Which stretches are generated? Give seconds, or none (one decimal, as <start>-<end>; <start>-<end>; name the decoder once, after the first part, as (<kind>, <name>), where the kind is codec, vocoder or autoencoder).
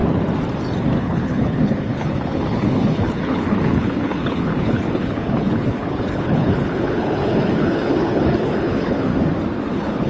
1.0-9.1 (codec, HILCodec); 9.7-10.1